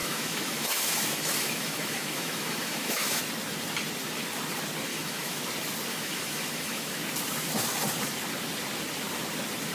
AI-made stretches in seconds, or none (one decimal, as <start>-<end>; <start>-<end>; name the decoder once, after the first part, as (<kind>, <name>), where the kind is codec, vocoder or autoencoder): 0.0-3.2 (autoencoder, DAC-VAE); 4.9-5.4; 5.9-7.0